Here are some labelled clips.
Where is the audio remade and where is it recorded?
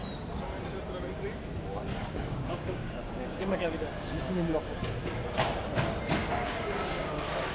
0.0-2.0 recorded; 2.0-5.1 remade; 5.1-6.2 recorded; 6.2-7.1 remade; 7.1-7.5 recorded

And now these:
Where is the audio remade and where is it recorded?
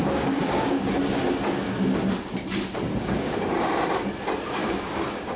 0.0-1.0 remade; 1.0-2.9 recorded; 2.9-3.5 remade; 3.5-4.6 recorded; 4.6-5.4 remade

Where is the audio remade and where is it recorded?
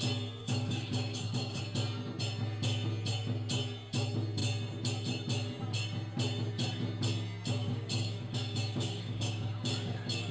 0.0-0.4 recorded; 0.4-1.6 remade; 1.6-7.6 recorded; 7.6-10.3 remade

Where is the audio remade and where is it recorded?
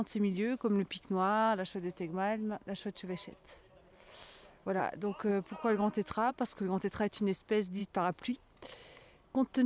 0.0-4.2 recorded; 4.2-4.8 remade; 4.8-9.7 recorded